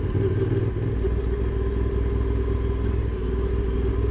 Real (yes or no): yes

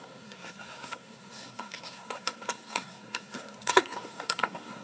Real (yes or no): no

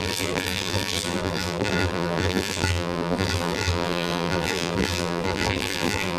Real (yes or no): no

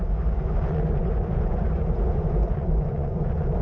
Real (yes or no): no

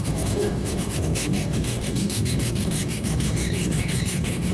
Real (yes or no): no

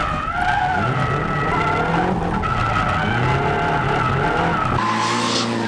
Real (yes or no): yes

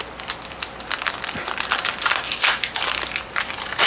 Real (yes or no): yes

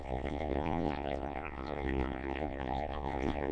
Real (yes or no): no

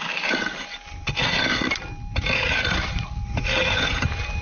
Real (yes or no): yes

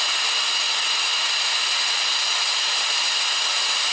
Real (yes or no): no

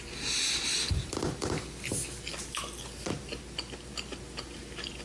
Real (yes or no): yes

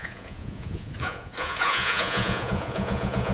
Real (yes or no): no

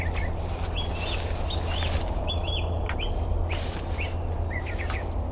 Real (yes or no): yes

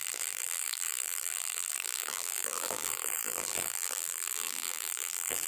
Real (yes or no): no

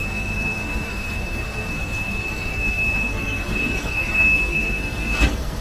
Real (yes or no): no